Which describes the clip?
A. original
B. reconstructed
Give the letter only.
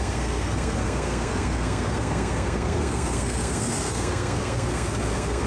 B